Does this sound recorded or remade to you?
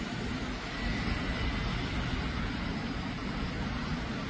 recorded